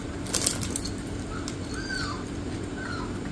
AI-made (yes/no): no